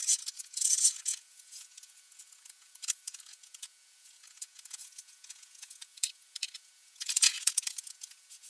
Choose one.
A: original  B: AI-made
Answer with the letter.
B